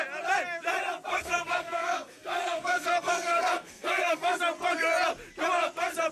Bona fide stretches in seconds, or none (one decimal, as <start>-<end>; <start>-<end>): 0.0-1.1; 4.4-6.1